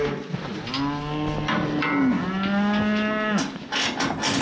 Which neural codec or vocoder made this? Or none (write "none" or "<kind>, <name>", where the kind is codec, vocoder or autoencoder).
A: none